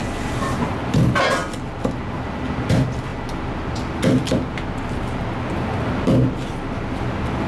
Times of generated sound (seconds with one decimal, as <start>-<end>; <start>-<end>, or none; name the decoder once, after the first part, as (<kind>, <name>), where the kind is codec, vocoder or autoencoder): none

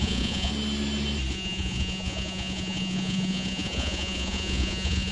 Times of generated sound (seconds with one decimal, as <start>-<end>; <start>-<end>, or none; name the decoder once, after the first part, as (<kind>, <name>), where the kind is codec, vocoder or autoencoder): 0.0-0.5 (vocoder, Vocos); 1.3-5.1

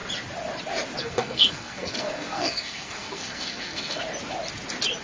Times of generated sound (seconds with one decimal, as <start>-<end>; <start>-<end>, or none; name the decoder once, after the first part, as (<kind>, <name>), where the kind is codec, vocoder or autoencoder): 1.0-4.0 (codec, SNAC)

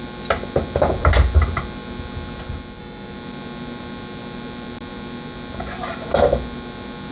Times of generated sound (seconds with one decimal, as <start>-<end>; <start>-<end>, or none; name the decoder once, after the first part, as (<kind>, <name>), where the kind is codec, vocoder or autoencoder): none

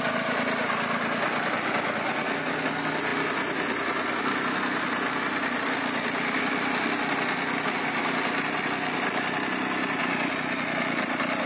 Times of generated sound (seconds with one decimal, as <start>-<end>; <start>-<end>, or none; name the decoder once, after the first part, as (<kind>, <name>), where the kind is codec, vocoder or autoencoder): none

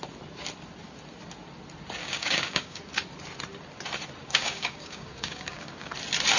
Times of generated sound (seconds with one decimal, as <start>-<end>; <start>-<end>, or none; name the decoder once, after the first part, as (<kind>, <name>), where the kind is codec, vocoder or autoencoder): 2.0-2.8 (codec, DAC); 4.2-5.9